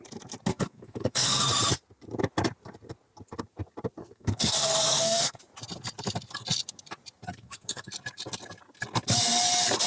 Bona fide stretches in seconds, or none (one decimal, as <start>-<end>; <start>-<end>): 0.0-0.5; 1.4-4.0; 5.4-7.3; 7.9-9.9